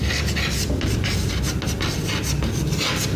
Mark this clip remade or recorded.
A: recorded